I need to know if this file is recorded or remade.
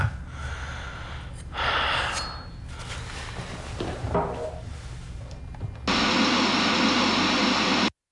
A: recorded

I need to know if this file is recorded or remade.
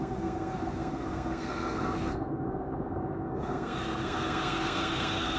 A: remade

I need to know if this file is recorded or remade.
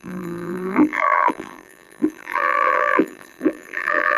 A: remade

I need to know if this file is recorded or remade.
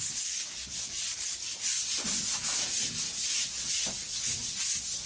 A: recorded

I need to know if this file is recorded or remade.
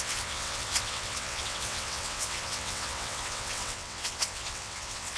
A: remade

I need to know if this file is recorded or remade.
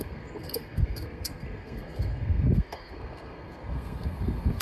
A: remade